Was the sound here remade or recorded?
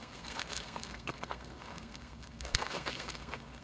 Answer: remade